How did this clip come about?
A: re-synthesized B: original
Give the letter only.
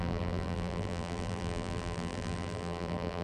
A